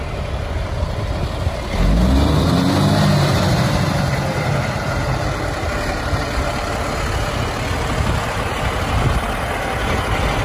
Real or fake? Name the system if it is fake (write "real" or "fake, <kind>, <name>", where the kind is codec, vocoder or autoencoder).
real